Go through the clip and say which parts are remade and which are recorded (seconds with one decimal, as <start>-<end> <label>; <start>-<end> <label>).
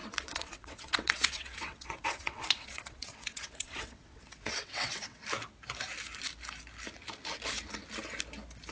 0.0-5.2 remade; 5.2-8.7 recorded